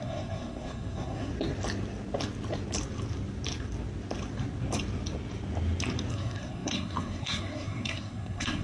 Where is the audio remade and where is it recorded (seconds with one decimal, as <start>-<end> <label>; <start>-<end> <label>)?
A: 0.0-1.3 remade; 1.3-6.1 recorded; 6.1-8.6 remade